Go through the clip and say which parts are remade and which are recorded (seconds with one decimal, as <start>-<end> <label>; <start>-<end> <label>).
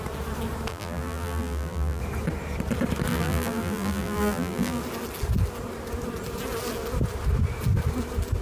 0.0-0.7 recorded; 0.7-2.0 remade; 2.0-3.1 recorded; 3.1-4.8 remade; 4.8-8.4 recorded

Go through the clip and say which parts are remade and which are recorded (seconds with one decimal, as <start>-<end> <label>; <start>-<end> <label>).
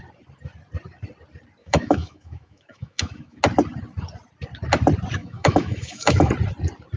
0.0-1.6 recorded; 1.6-3.4 remade; 3.4-5.2 recorded; 5.2-6.3 remade; 6.3-7.0 recorded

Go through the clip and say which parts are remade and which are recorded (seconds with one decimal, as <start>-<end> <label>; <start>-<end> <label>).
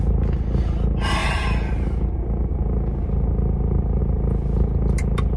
0.0-5.4 recorded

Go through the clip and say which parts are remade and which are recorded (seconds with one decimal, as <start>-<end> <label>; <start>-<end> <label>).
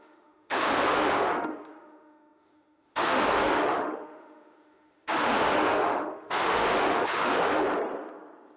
0.0-7.6 remade; 7.6-8.6 recorded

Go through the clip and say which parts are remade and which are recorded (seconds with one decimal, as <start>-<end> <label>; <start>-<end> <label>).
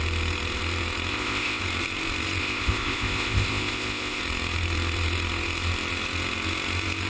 0.0-1.1 recorded; 1.1-1.6 remade; 1.6-2.4 recorded; 2.4-4.2 remade; 4.2-7.1 recorded